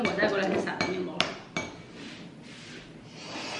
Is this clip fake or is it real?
real